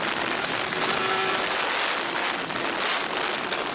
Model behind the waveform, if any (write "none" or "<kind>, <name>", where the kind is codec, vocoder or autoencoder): none